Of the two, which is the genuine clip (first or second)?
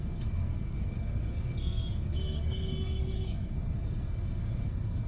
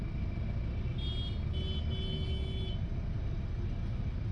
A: second